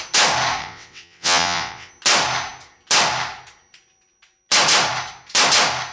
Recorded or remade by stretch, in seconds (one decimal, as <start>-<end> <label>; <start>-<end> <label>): 0.0-0.6 recorded; 0.6-1.9 remade; 1.9-5.9 recorded